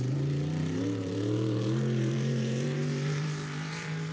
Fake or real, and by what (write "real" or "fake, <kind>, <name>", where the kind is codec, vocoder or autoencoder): fake, vocoder, BigVGAN v2